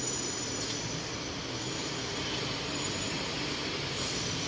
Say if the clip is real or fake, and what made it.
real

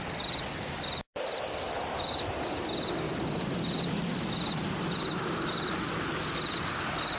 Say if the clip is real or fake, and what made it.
real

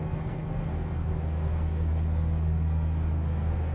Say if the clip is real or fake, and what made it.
fake, codec, SNAC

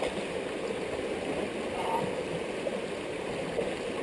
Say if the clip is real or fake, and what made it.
real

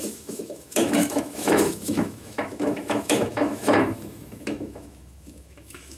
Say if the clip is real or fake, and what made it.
fake, autoencoder, DAC-VAE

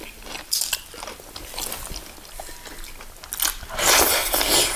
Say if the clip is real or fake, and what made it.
real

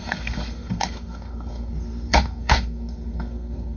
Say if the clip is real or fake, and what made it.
fake, codec, SNAC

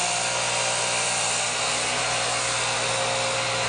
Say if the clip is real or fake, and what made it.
real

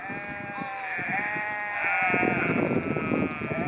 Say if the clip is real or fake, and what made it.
real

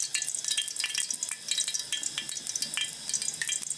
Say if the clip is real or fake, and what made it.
real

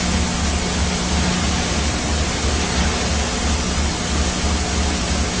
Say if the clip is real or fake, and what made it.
real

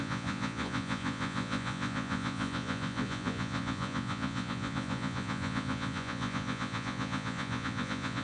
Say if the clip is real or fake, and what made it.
fake, vocoder, Vocos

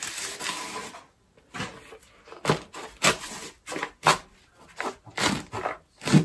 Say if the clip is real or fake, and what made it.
real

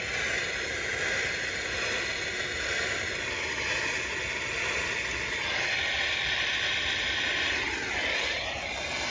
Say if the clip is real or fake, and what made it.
real